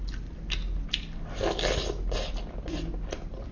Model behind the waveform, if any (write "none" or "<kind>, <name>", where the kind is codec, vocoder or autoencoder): none